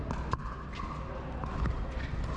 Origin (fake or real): real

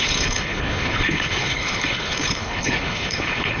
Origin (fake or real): fake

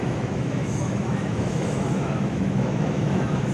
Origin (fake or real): fake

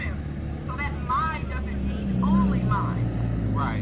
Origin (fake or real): real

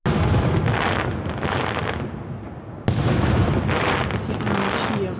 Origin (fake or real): real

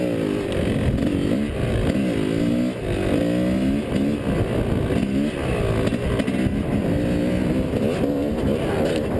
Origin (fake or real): real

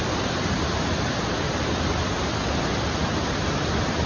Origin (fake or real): real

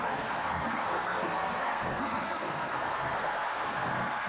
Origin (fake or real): fake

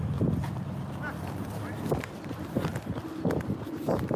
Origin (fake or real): real